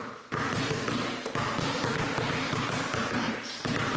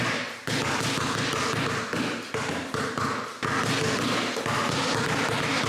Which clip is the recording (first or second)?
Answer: second